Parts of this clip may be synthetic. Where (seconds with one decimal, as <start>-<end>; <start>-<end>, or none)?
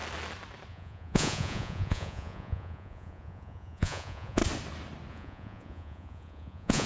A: 0.7-4.4; 5.1-6.9